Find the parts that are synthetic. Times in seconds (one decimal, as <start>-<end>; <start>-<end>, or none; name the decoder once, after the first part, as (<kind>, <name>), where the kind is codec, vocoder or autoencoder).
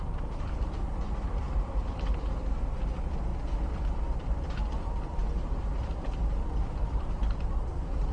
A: 0.0-3.3 (vocoder, BigVGAN v2); 3.9-8.1